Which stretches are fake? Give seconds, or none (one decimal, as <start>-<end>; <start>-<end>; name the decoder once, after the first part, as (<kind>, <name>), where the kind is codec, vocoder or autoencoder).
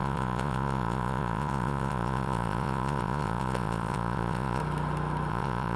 0.0-4.6 (vocoder, Vocos); 5.3-5.8